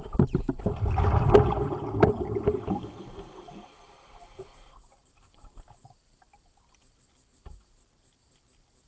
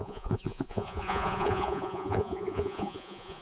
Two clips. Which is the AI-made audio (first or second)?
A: second